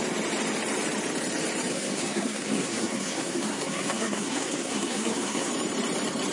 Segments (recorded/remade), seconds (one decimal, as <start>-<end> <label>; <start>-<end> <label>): 0.0-1.7 recorded; 1.7-5.5 remade; 5.5-6.3 recorded